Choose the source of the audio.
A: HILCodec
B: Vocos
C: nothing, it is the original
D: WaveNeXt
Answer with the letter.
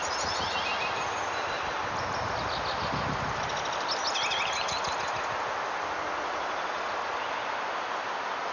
C